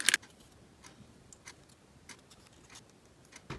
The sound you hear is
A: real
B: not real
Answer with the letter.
A